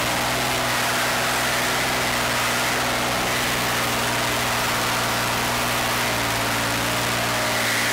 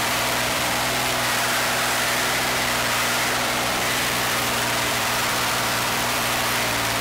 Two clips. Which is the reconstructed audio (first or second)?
second